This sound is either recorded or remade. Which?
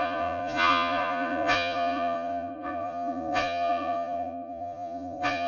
remade